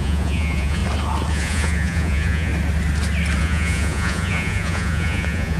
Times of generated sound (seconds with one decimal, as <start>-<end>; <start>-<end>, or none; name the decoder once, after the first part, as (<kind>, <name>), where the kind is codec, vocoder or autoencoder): 0.0-0.8 (vocoder, Vocos); 1.3-2.5; 3.4-5.6